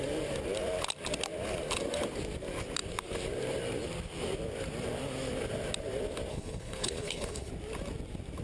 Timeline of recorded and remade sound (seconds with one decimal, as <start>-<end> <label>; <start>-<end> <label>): 0.0-6.3 recorded; 6.3-7.5 remade; 7.5-8.4 recorded